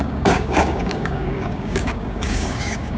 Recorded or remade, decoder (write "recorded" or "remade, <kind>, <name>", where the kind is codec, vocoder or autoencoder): remade, codec, DAC